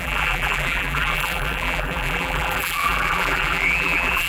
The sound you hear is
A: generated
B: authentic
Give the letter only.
A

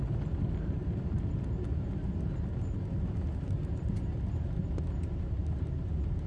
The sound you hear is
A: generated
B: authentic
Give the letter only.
B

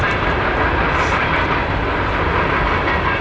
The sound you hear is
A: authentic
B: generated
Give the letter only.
A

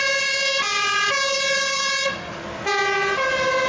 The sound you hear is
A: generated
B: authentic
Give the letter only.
B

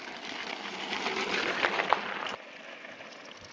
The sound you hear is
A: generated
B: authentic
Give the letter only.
B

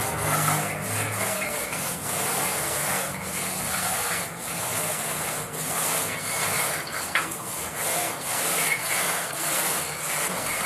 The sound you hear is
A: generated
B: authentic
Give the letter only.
A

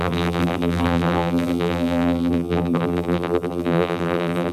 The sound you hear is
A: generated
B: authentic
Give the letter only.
A